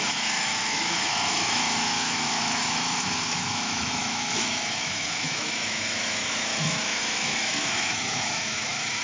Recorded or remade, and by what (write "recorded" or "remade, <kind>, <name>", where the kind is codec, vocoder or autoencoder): remade, autoencoder, DAC-VAE